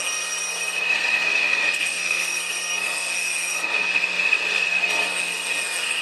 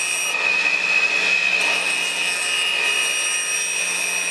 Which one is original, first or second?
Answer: second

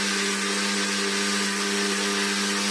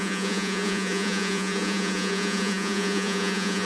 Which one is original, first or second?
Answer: first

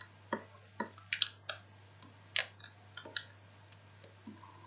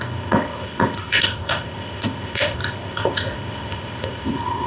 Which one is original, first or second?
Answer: first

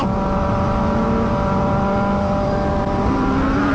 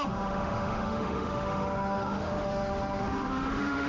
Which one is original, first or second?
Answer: first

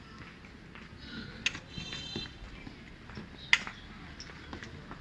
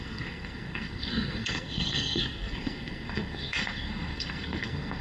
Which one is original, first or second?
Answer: first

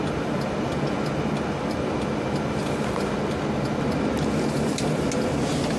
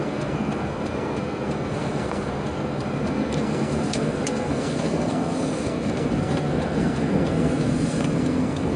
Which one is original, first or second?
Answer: first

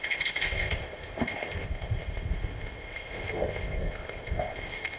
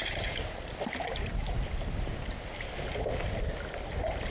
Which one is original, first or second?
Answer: second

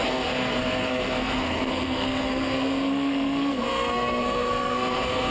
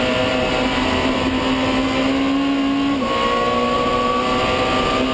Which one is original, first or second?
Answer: second